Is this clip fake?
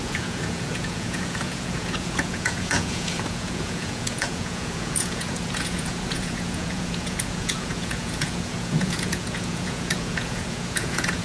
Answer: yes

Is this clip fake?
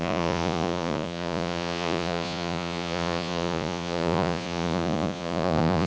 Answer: yes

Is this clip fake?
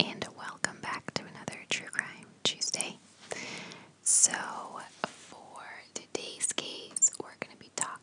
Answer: no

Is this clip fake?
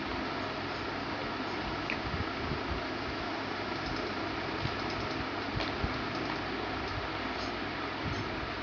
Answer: no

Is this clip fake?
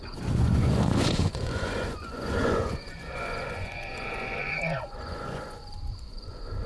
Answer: yes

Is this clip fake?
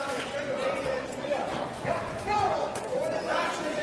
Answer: yes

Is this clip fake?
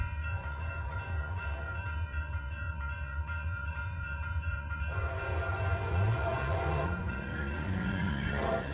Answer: yes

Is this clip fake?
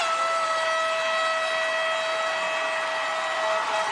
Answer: no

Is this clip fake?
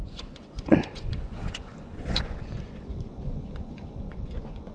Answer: yes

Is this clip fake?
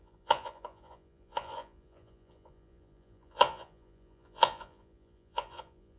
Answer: yes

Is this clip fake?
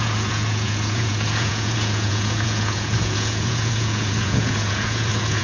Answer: yes